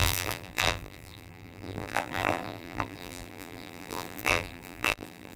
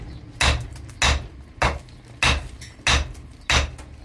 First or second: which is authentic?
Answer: second